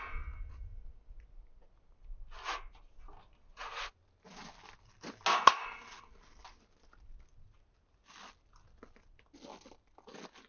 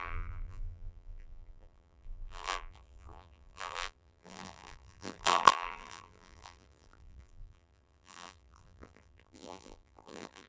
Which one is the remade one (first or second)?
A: second